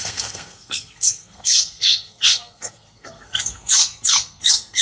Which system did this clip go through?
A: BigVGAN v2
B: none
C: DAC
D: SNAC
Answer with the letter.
D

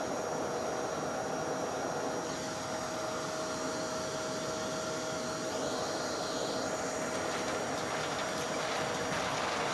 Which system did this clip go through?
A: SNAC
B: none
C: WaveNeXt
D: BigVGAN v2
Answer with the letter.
B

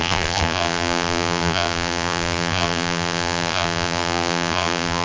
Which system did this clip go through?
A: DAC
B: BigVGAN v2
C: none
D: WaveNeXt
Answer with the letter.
B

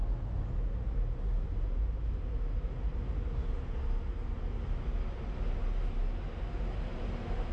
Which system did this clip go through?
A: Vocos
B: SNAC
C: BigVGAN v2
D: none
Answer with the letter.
D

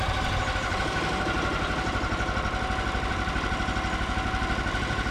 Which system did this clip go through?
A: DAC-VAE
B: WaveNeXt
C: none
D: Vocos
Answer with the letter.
C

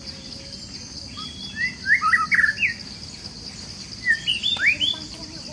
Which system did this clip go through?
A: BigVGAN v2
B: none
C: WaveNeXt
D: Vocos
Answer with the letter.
B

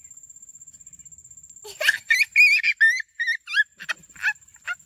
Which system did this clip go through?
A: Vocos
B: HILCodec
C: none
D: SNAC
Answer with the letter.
C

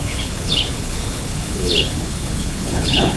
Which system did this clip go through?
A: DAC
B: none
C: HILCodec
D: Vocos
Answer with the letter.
C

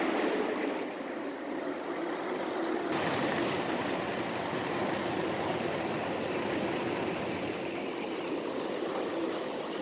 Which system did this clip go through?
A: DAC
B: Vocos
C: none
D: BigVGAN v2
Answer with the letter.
D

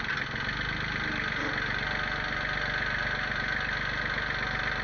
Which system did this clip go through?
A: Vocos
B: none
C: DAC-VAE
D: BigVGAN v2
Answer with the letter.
B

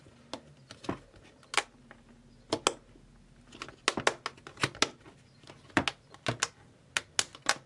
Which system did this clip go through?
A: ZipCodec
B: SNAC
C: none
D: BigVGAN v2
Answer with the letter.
C